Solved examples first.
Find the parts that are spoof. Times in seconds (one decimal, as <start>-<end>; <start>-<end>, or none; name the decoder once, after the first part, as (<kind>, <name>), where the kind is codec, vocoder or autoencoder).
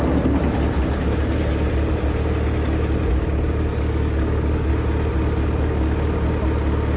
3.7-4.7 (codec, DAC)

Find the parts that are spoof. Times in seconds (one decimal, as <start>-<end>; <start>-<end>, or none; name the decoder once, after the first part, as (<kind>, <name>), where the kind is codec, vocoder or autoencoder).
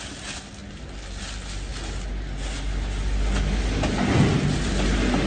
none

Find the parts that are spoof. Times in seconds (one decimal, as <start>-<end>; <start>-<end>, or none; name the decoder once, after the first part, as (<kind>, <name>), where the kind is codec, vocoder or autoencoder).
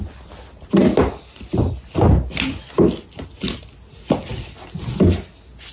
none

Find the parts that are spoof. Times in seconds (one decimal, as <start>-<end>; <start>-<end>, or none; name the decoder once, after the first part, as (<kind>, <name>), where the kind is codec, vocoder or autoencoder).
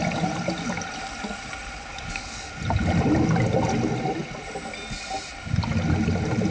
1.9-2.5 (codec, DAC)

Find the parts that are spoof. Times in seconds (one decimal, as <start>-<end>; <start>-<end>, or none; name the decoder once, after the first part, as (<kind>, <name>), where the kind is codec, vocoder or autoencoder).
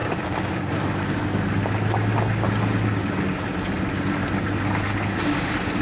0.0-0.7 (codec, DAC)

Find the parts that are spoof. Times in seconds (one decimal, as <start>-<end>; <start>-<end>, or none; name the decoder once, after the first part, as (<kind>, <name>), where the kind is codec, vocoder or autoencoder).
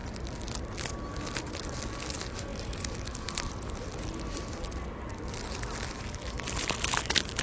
none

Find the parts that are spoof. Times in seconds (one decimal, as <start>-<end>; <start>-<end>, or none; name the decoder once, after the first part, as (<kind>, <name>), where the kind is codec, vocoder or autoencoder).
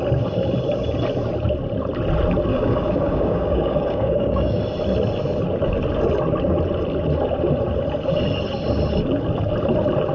2.5-4.6 (codec, DAC)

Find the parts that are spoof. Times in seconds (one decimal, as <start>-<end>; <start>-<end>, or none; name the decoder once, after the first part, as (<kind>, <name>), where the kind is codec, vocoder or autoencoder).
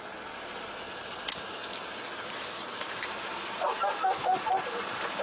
none